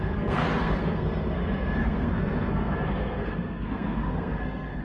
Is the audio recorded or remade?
remade